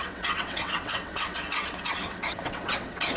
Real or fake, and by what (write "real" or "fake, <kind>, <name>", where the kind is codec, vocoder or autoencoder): fake, vocoder, WaveNeXt